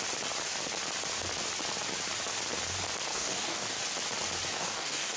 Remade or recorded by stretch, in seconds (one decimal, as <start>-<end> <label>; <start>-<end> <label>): 0.0-3.1 recorded; 3.1-3.8 remade; 3.8-4.5 recorded; 4.5-5.2 remade